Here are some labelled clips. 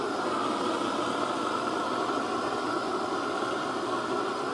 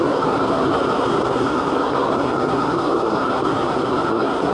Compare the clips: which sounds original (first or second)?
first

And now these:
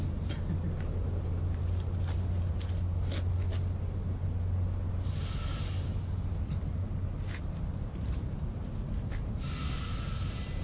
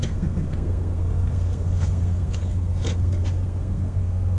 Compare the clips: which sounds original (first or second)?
first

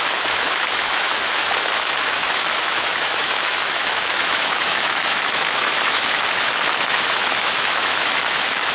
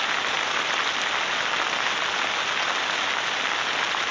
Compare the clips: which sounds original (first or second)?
second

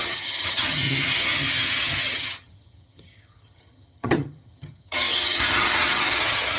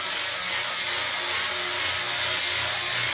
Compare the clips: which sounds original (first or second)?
second